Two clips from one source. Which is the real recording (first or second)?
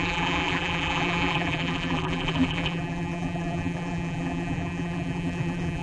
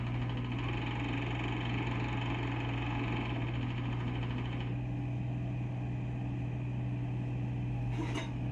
second